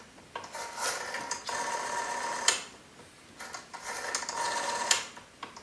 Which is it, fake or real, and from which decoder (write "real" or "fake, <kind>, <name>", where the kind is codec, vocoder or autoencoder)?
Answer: real